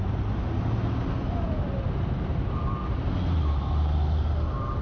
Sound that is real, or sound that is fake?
real